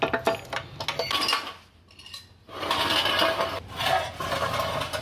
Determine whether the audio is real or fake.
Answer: real